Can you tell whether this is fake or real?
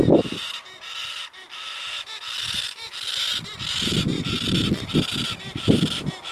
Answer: real